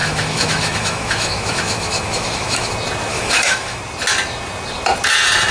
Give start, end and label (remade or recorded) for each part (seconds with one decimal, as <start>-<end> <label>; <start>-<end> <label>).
0.0-2.7 remade; 2.7-3.1 recorded; 3.1-3.8 remade; 3.8-5.5 recorded